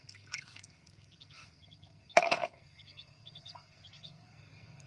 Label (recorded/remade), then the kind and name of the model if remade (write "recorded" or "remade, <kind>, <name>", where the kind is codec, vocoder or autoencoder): remade, codec, SNAC